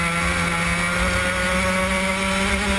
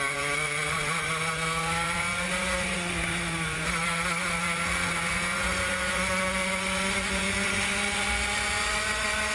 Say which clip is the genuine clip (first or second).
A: first